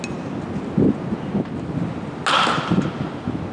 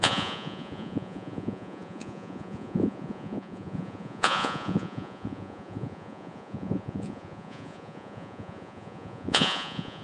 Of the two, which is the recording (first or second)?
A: first